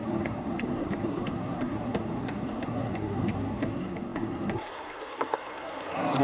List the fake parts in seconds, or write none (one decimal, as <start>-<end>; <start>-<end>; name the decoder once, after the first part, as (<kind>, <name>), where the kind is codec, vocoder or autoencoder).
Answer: 0.0-6.2 (codec, SNAC)

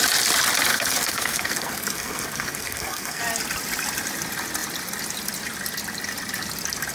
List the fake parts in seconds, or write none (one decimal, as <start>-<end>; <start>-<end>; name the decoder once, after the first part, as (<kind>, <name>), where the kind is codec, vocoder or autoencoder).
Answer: 0.7-3.2 (codec, SNAC)

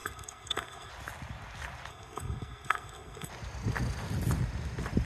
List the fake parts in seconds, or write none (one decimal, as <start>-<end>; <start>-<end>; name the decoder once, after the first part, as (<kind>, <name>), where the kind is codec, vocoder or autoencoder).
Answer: 0.0-0.9 (codec, SNAC); 1.9-3.3

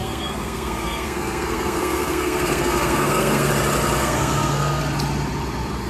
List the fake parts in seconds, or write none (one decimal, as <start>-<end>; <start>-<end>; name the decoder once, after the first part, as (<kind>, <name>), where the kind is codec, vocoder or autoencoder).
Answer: 0.0-3.5 (codec, SNAC); 4.0-4.8

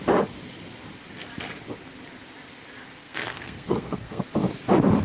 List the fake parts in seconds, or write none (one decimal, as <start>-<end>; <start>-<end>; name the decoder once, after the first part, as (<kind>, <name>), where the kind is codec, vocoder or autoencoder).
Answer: 3.0-4.2 (codec, SNAC)

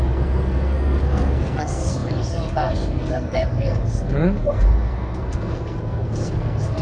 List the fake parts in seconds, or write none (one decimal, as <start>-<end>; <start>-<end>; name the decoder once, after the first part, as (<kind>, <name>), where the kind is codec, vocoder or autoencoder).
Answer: 0.0-6.8 (codec, SNAC)